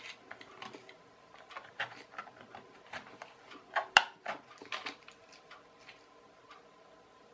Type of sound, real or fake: real